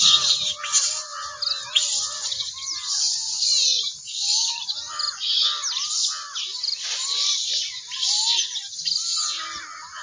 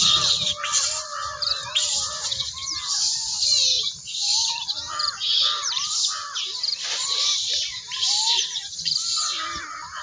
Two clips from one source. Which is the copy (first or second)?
second